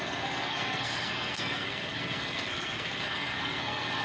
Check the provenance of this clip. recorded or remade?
remade